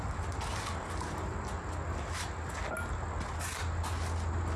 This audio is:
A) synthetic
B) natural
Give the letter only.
B